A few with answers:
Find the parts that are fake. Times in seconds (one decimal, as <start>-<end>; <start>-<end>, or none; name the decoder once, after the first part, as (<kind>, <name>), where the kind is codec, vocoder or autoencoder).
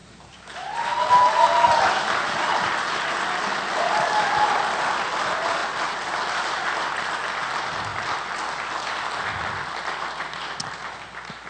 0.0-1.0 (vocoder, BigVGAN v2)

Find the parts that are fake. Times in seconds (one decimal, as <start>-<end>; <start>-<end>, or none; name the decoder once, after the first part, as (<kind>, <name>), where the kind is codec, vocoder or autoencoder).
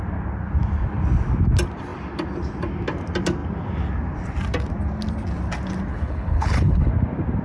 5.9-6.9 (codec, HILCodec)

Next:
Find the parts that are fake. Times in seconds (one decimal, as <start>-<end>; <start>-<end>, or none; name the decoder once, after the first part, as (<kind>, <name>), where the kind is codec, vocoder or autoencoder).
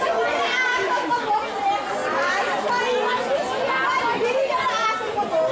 0.7-1.3 (autoencoder, DAC-VAE)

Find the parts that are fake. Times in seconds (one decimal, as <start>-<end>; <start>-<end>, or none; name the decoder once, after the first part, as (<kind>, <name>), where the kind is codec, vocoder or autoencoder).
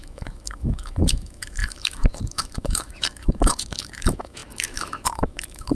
0.0-5.7 (autoencoder, DAC-VAE)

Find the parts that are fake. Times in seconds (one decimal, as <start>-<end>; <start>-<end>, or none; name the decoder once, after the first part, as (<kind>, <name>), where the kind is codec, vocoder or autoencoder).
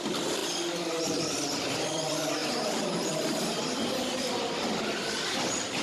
0.0-0.4 (vocoder, BigVGAN v2); 1.0-5.8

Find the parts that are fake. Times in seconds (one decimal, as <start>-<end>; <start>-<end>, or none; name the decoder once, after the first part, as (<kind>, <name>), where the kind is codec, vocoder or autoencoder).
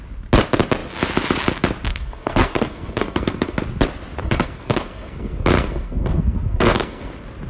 1.9-3.6 (codec, SNAC); 4.2-7.1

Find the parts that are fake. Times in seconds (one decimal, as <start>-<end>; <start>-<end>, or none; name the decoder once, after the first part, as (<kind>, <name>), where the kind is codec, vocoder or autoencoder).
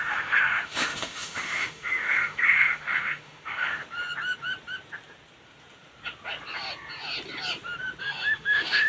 0.0-3.8 (autoencoder, DAC-VAE); 8.0-8.9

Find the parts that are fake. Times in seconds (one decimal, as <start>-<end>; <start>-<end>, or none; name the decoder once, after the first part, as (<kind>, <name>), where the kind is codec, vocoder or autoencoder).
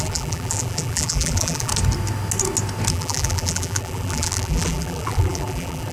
0.0-1.7 (vocoder, BigVGAN v2); 2.9-5.9